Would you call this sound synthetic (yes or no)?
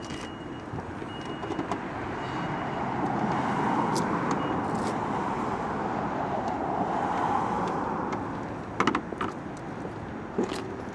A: no